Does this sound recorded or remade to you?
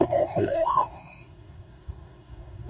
remade